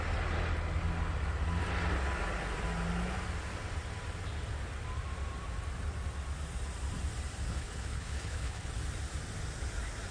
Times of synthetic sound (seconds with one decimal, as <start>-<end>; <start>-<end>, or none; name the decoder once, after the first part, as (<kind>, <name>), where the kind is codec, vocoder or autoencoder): 7.5-8.7 (codec, HILCodec)